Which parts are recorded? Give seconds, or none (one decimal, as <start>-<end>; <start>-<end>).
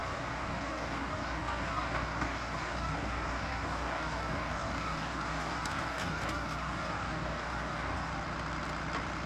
8.1-9.3